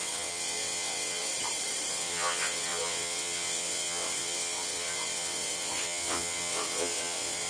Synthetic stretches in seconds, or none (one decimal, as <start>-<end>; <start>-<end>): 0.0-1.3; 1.9-7.5